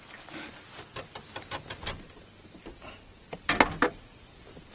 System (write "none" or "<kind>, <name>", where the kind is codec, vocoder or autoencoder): none